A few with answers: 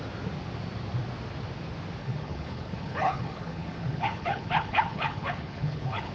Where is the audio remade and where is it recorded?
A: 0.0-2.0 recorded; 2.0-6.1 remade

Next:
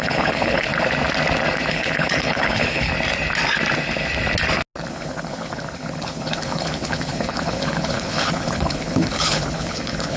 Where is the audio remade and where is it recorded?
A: 0.0-0.7 remade; 0.7-1.7 recorded; 1.7-2.9 remade; 2.9-4.9 recorded; 4.9-10.2 remade

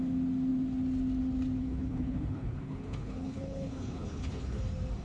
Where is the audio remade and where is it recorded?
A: 0.0-1.6 recorded; 1.6-4.6 remade; 4.6-5.0 recorded

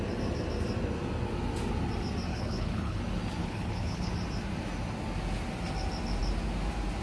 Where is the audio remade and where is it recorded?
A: 0.0-2.3 recorded; 2.3-3.0 remade; 3.0-3.4 recorded; 3.4-4.1 remade; 4.1-7.0 recorded

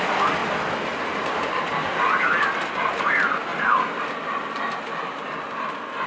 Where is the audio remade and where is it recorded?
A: 0.0-6.1 recorded